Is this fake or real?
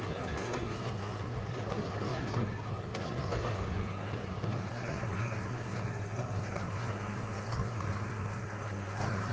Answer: fake